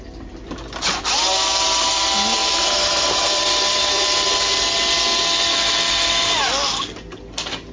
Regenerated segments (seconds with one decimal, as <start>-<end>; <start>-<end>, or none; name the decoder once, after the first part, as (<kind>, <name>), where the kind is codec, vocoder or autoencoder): 2.4-4.2 (vocoder, BigVGAN v2)